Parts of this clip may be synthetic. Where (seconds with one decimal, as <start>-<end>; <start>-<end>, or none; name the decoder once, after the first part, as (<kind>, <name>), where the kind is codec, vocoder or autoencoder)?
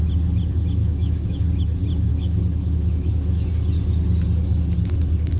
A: 0.8-1.4 (autoencoder, DAC-VAE); 2.1-3.5